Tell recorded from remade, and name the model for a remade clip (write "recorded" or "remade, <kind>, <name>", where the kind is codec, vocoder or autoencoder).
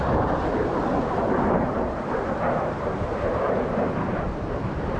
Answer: remade, vocoder, BigVGAN v2